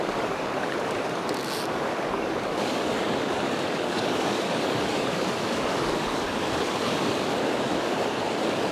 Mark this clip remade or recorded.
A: remade